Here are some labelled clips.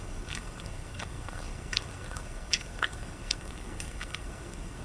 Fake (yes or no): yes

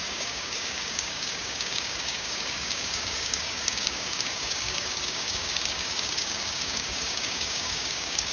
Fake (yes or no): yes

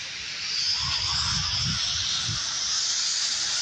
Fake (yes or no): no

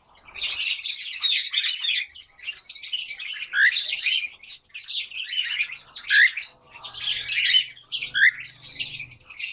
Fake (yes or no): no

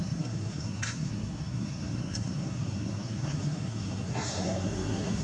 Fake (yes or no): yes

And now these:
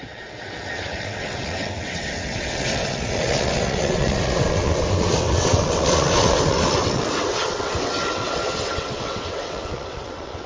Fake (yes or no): yes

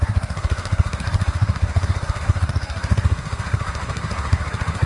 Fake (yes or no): yes